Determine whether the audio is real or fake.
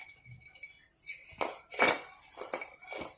real